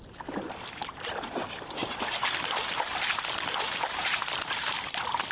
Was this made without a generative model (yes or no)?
no